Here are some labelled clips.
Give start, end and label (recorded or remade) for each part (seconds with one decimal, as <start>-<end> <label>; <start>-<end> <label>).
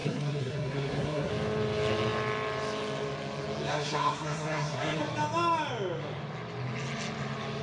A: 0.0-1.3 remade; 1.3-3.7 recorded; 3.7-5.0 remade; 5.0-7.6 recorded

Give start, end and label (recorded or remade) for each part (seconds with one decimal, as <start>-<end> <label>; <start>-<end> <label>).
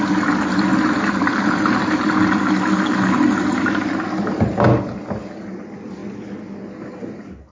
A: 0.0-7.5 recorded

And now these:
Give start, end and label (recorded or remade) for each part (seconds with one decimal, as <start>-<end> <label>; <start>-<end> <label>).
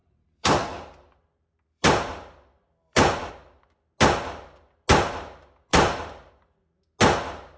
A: 0.0-3.3 remade; 3.3-5.7 recorded; 5.7-6.3 remade; 6.3-7.6 recorded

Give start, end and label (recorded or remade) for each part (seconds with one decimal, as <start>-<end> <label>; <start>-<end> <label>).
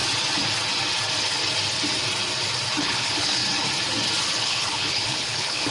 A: 0.0-2.8 recorded; 2.8-3.4 remade; 3.4-4.4 recorded; 4.4-5.7 remade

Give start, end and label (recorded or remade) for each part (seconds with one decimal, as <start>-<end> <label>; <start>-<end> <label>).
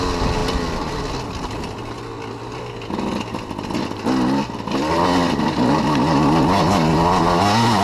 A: 0.0-7.8 recorded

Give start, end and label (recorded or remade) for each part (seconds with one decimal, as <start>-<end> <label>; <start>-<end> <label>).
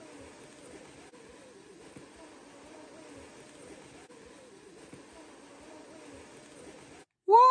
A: 0.0-7.5 recorded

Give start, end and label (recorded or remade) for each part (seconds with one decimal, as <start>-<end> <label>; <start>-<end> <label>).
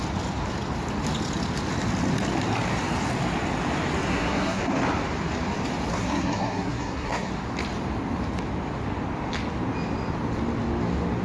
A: 0.0-4.1 recorded; 4.1-4.6 remade; 4.6-5.9 recorded; 5.9-7.3 remade; 7.3-11.2 recorded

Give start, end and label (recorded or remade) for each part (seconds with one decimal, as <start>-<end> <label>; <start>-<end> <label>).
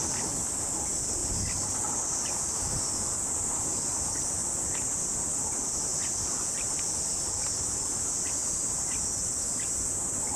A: 0.0-5.9 recorded; 5.9-6.5 remade; 6.5-10.4 recorded